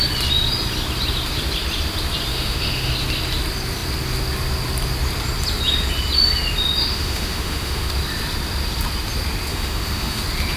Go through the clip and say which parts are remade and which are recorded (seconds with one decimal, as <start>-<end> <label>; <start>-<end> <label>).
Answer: 0.0-2.3 recorded; 2.3-2.9 remade; 2.9-6.8 recorded; 6.8-7.9 remade; 7.9-9.5 recorded; 9.5-10.2 remade; 10.2-10.6 recorded